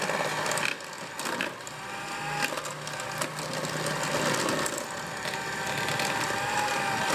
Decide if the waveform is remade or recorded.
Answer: recorded